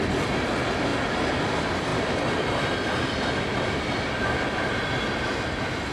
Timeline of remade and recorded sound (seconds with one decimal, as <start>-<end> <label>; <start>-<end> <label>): 0.0-0.9 recorded; 0.9-1.4 remade; 1.4-1.9 recorded; 1.9-4.9 remade; 4.9-5.9 recorded